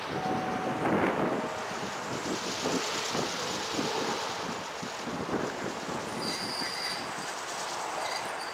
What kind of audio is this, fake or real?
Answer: real